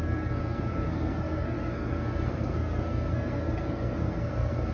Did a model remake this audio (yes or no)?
yes